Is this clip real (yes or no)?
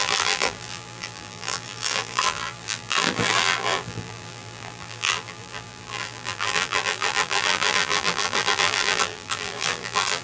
no